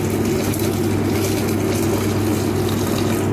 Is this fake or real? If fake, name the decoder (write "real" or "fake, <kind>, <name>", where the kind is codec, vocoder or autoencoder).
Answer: real